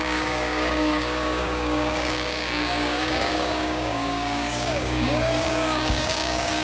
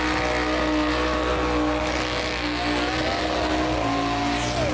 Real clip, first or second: second